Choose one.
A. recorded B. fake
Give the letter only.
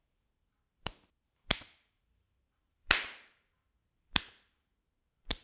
B